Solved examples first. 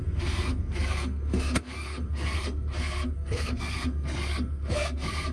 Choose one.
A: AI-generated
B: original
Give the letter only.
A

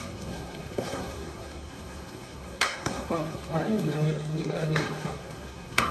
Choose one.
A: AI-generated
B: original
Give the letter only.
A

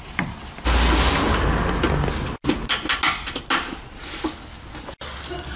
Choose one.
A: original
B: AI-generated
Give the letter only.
A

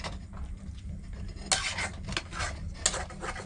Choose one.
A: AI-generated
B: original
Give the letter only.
B